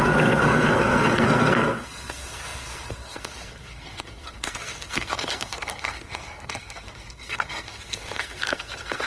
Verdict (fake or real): fake